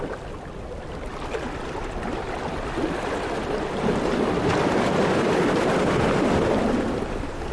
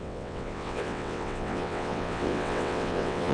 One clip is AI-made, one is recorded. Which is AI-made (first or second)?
second